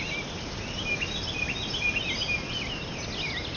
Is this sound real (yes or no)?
yes